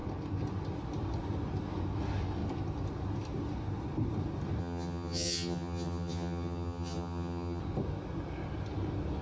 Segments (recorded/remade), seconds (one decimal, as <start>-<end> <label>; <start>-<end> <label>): 0.0-4.6 recorded; 4.6-7.6 remade; 7.6-9.2 recorded